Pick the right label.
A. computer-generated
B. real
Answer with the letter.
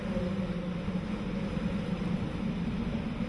B